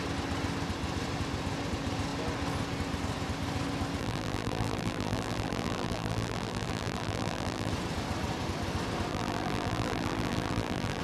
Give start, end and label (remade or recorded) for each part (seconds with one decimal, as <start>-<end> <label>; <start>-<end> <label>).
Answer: 0.0-4.0 recorded; 4.0-7.7 remade; 7.7-9.1 recorded; 9.1-11.0 remade